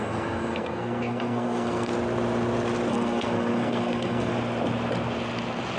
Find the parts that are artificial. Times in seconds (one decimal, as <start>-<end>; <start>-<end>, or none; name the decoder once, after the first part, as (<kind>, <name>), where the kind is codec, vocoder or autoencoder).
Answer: 0.0-1.9 (codec, SNAC); 2.9-4.3